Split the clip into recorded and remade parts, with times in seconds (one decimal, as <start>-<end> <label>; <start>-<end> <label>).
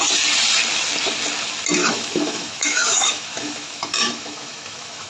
0.0-1.8 recorded; 1.8-5.1 remade